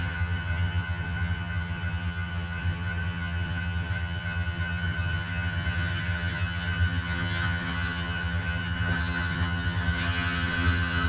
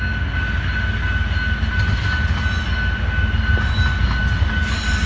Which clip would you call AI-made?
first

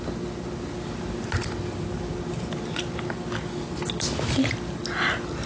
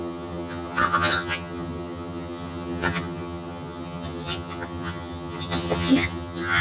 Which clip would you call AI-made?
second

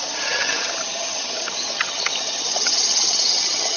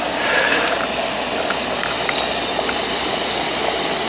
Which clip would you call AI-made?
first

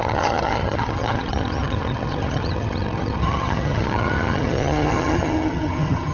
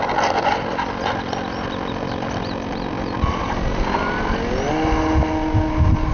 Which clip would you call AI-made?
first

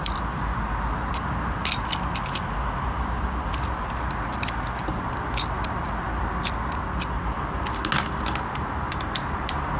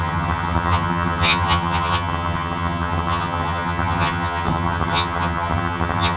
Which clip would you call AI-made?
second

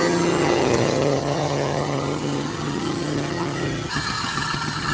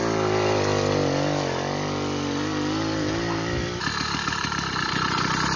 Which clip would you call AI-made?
first